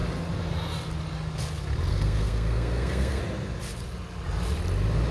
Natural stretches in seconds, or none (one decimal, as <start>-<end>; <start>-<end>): 0.0-1.9; 3.2-5.1